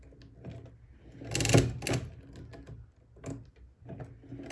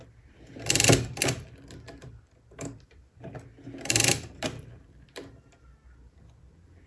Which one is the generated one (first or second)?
second